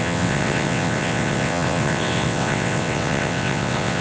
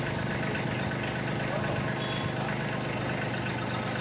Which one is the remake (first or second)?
first